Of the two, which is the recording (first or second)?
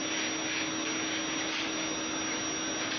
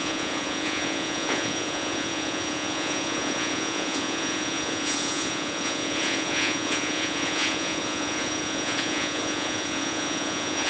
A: first